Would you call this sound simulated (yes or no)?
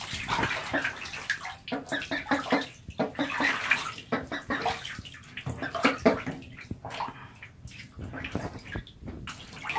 no